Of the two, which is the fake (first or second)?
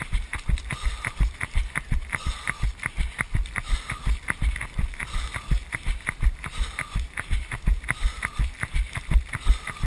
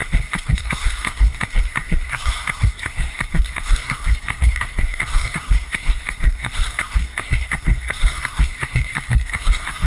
second